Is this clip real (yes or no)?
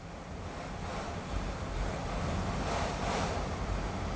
yes